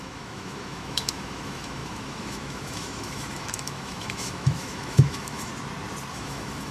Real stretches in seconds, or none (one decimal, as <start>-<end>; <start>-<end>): 5.5-6.1